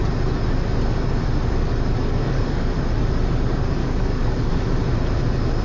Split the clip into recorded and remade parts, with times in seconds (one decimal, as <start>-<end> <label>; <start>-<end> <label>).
0.0-2.0 recorded; 2.0-2.7 remade; 2.7-3.8 recorded; 3.8-4.5 remade; 4.5-5.6 recorded